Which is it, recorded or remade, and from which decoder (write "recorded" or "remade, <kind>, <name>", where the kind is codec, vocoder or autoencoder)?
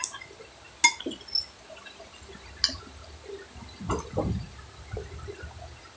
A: recorded